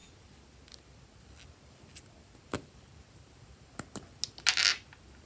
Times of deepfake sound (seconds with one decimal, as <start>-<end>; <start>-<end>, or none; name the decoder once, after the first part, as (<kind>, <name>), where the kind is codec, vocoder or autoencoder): none